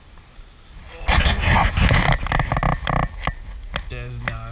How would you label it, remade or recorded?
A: recorded